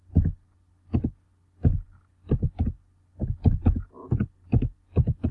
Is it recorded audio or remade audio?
recorded